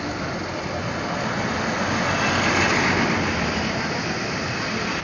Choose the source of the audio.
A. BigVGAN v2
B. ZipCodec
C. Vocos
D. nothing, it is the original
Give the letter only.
D